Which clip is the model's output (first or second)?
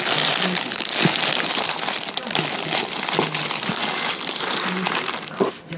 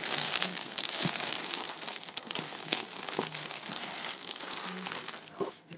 second